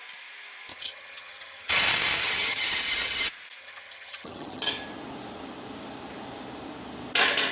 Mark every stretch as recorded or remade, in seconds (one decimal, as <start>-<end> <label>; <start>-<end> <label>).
0.0-0.7 recorded; 0.7-1.8 remade; 1.8-2.2 recorded; 2.2-2.7 remade; 2.7-3.6 recorded; 3.6-4.7 remade; 4.7-7.5 recorded